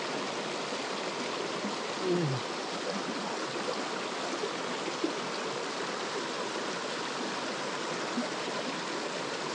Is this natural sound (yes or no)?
yes